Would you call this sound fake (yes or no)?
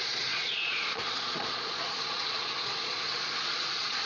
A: yes